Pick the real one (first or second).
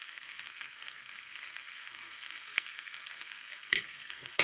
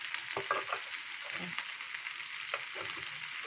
second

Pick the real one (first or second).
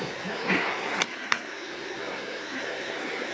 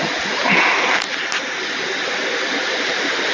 second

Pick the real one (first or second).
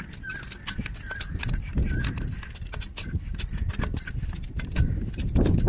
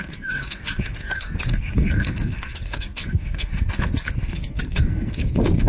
first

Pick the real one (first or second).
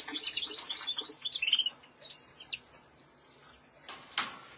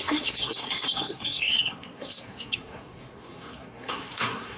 first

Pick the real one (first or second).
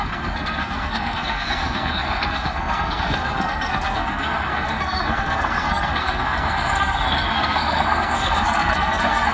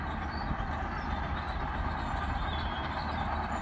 second